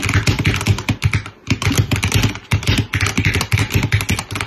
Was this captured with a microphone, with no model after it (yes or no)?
yes